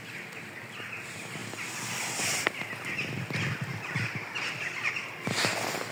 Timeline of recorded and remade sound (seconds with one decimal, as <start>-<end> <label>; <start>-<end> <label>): 0.0-5.9 recorded